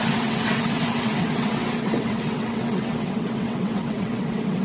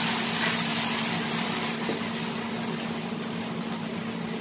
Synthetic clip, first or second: first